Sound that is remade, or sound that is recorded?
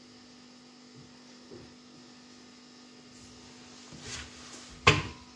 recorded